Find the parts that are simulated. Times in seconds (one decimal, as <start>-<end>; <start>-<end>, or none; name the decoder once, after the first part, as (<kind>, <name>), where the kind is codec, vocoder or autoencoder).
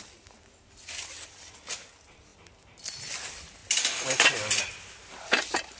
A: none